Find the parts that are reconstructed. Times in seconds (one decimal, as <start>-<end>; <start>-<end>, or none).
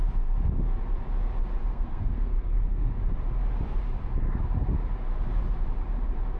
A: 1.7-2.9